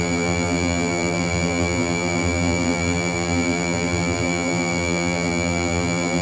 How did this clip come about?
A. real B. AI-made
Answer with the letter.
B